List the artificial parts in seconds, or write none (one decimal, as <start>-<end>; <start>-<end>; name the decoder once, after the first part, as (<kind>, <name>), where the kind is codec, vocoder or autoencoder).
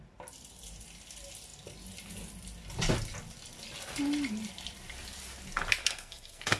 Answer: 5.8-6.6 (codec, SNAC)